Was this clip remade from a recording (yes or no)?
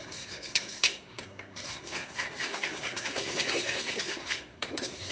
yes